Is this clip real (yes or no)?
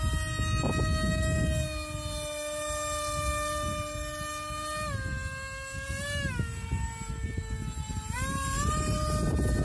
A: yes